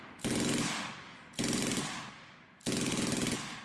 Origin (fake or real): real